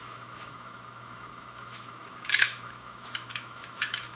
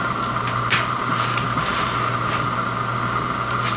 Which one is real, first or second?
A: second